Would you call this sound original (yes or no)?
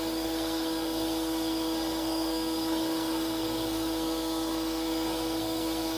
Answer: no